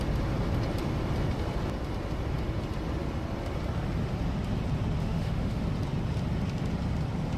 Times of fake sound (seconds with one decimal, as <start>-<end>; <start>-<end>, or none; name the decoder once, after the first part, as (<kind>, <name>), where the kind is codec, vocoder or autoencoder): 5.0-5.6 (autoencoder, DAC-VAE)